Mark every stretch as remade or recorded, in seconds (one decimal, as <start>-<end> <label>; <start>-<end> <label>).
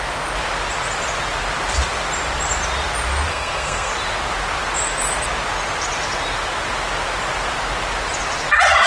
0.0-3.3 recorded; 3.3-3.9 remade; 3.9-8.9 recorded